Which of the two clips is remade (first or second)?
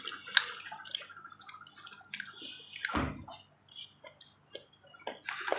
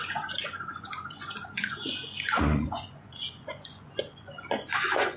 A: second